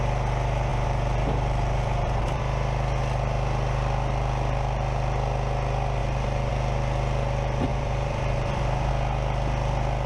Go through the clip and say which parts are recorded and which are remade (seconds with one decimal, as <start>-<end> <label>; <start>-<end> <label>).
0.0-0.7 recorded; 0.7-2.4 remade; 2.4-6.0 recorded; 6.0-6.5 remade; 6.5-7.7 recorded; 7.7-8.9 remade; 8.9-10.1 recorded